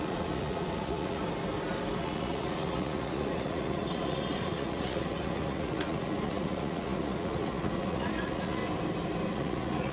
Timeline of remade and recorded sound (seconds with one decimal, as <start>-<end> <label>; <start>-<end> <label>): 0.0-1.2 remade; 1.2-2.0 recorded; 2.0-8.6 remade; 8.6-9.3 recorded; 9.3-9.9 remade